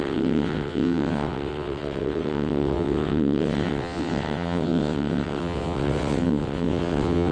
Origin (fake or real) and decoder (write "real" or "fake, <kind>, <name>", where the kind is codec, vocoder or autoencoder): fake, vocoder, WaveNeXt